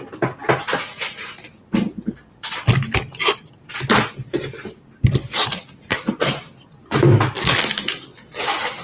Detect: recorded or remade recorded